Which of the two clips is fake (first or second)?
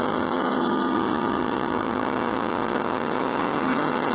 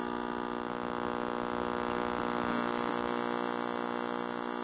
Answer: first